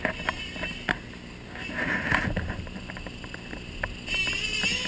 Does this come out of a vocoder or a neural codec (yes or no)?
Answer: no